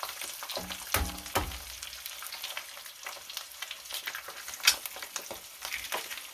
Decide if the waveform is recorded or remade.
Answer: recorded